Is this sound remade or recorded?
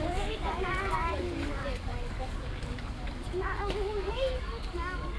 remade